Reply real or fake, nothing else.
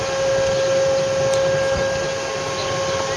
real